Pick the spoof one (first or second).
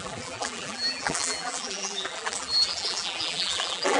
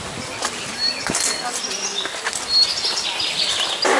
first